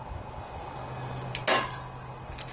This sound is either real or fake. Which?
real